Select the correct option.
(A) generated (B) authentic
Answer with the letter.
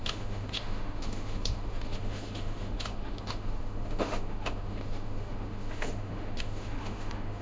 A